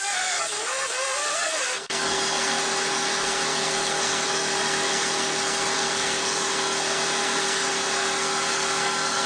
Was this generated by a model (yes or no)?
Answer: yes